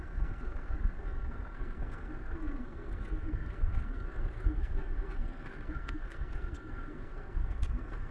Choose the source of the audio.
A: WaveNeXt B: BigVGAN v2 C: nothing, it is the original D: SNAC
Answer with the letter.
D